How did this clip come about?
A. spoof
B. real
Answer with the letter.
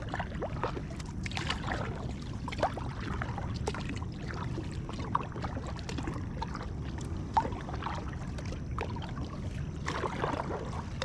B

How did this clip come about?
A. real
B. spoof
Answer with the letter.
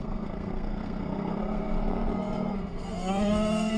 B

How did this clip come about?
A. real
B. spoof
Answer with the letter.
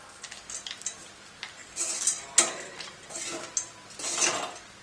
A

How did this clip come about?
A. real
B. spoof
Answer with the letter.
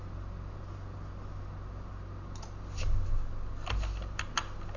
A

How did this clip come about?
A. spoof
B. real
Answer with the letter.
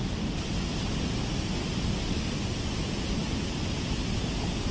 B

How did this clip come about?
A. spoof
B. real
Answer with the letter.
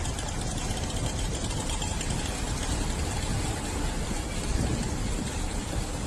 B